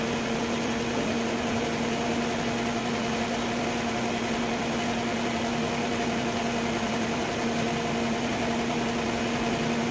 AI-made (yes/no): no